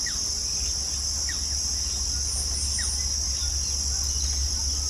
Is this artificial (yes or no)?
no